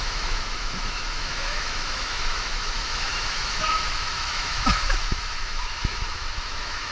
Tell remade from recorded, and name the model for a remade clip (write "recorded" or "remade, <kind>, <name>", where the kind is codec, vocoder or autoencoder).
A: remade, autoencoder, DAC-VAE